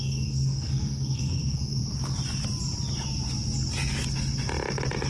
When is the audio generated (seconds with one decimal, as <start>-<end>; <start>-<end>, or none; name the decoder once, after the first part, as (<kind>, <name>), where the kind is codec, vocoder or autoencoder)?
0.0-1.8 (codec, SNAC)